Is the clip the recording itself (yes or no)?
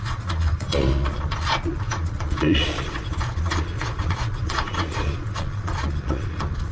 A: no